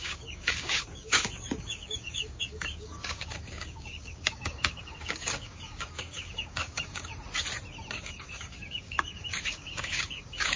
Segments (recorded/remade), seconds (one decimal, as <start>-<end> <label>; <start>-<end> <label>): 0.0-7.1 remade; 7.1-7.9 recorded; 7.9-10.6 remade